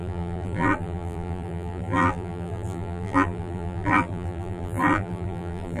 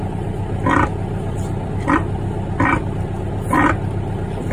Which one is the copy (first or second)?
first